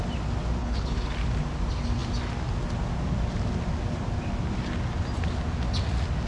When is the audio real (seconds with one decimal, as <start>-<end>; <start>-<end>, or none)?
0.0-0.6; 1.1-6.3